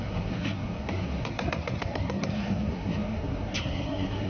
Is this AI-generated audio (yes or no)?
yes